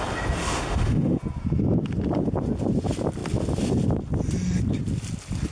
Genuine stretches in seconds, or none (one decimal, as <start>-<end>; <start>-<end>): 0.0-0.4; 1.2-5.5